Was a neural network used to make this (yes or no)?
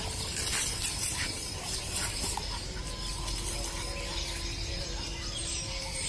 no